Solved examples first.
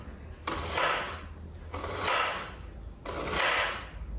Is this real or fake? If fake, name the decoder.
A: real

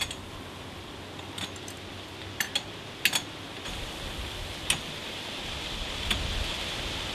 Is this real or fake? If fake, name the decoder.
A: real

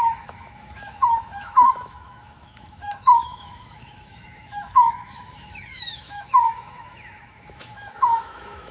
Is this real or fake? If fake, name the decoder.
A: fake, autoencoder, DAC-VAE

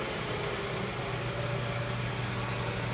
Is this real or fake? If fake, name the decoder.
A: real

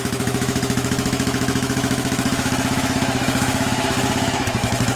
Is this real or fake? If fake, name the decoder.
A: fake, autoencoder, DAC-VAE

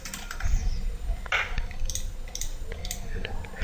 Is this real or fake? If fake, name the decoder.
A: real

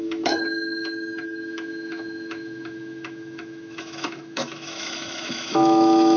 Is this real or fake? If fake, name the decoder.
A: fake, autoencoder, DAC-VAE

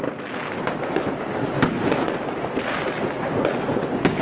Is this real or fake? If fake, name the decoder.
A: real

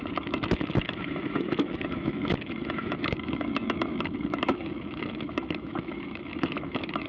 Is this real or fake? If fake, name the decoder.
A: fake, autoencoder, DAC-VAE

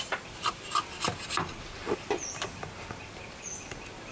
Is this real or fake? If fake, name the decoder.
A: real